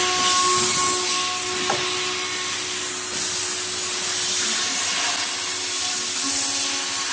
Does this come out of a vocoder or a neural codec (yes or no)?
no